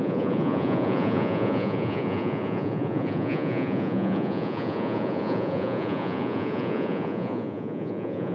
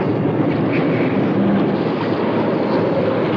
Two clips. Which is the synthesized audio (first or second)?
first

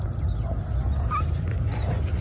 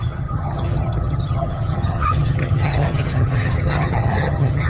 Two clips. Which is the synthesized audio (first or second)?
second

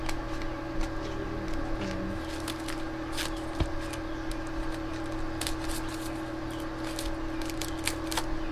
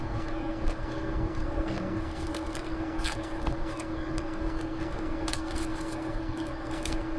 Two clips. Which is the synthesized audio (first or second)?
second